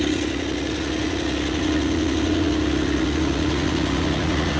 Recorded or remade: remade